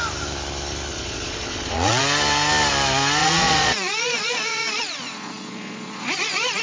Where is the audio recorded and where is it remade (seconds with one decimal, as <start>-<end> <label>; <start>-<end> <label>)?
0.0-0.9 recorded; 0.9-2.0 remade; 2.0-3.2 recorded; 3.2-6.6 remade